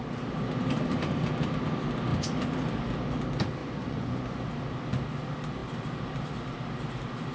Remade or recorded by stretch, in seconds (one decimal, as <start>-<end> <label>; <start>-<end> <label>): 0.0-3.6 recorded; 3.6-4.5 remade; 4.5-7.3 recorded